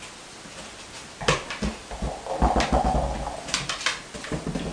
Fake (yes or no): no